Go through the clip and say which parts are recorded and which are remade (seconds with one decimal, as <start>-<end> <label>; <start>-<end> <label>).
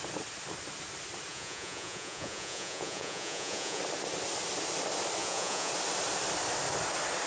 0.0-1.3 recorded; 1.3-3.8 remade; 3.8-5.2 recorded; 5.2-5.7 remade; 5.7-7.3 recorded